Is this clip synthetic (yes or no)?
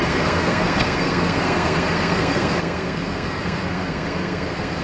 yes